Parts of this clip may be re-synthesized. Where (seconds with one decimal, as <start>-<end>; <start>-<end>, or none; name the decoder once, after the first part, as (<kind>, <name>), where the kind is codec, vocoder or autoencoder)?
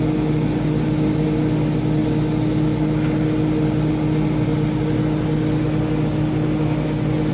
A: none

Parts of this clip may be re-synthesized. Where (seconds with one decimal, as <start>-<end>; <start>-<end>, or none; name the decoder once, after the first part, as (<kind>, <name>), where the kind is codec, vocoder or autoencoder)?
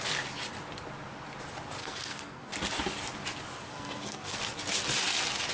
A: 1.8-2.5 (codec, SNAC); 3.6-4.4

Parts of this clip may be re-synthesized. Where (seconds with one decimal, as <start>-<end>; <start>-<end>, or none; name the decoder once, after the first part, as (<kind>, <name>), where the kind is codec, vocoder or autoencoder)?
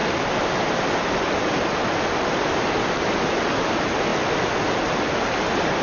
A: none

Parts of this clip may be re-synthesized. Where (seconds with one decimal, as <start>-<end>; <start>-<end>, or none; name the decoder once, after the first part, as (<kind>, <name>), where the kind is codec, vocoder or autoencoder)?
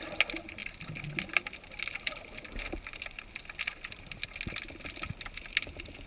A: none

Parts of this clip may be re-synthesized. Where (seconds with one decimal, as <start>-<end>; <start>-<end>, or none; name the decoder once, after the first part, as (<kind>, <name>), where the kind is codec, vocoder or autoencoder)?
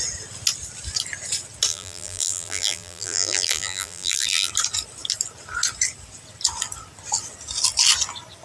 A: 1.7-4.5 (vocoder, BigVGAN v2)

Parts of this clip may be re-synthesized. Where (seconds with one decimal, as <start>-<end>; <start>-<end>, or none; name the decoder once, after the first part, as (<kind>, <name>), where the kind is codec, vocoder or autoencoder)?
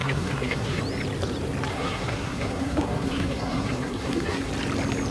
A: 0.0-0.8 (codec, SNAC); 1.7-4.5